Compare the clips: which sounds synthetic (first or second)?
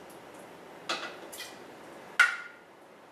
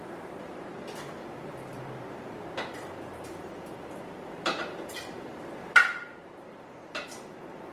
second